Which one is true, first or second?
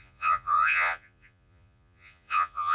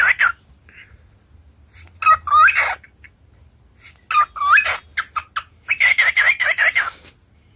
second